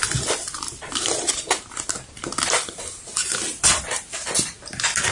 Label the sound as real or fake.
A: real